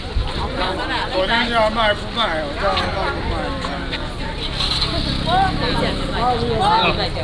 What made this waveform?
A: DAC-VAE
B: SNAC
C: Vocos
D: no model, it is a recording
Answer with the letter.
D